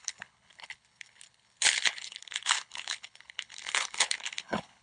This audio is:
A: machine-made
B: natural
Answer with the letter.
A